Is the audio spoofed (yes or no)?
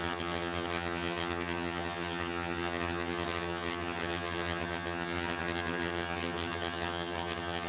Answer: yes